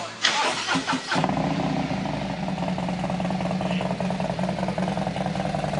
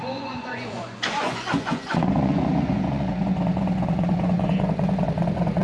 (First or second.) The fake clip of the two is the second